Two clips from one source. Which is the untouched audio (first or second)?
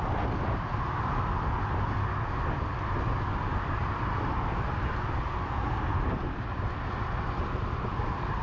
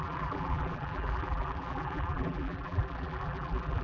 first